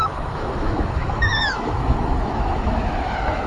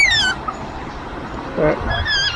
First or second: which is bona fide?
second